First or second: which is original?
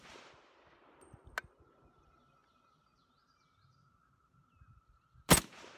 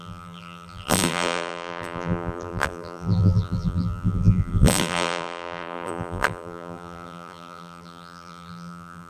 first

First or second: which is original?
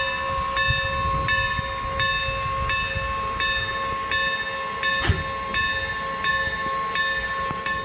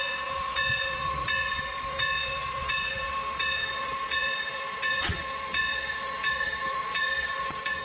first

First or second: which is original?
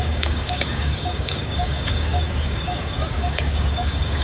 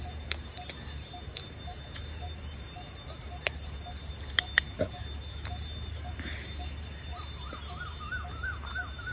second